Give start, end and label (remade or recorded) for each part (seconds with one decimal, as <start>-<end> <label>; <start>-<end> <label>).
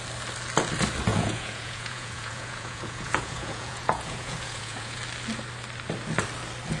0.0-1.1 recorded; 1.1-5.0 remade; 5.0-6.8 recorded